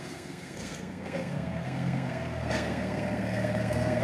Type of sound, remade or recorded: remade